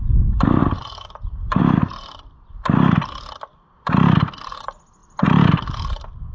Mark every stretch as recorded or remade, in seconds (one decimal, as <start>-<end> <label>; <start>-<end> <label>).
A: 0.0-0.6 recorded; 0.6-1.6 remade; 1.6-5.0 recorded; 5.0-6.3 remade